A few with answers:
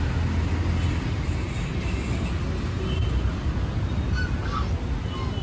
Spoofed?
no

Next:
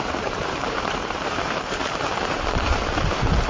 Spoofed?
yes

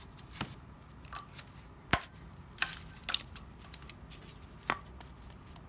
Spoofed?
no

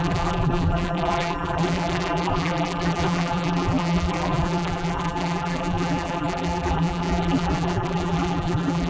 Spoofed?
yes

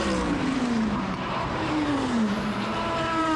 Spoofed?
yes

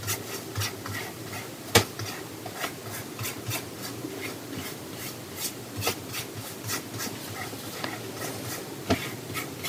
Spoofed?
no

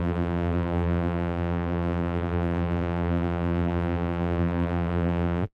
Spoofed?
yes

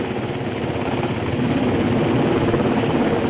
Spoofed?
no